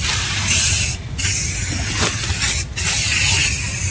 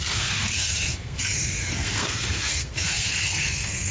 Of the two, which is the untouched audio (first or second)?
first